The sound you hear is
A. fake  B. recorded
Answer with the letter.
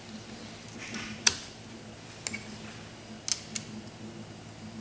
B